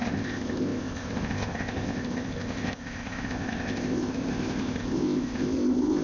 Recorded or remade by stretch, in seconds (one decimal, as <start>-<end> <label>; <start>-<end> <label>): 0.0-6.0 remade